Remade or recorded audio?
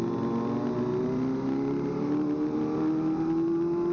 recorded